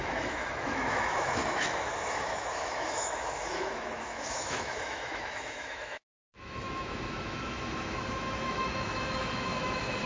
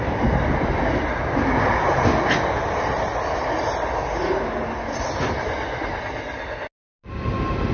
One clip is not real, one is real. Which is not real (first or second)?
first